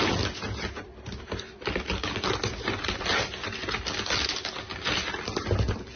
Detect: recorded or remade recorded